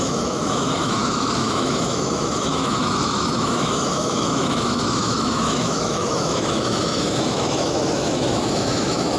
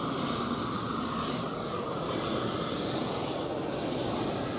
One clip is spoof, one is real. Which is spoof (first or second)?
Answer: first